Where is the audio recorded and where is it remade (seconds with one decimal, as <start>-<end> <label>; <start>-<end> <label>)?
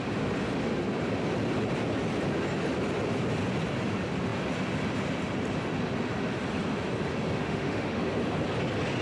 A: 0.0-7.4 recorded; 7.4-8.0 remade; 8.0-9.0 recorded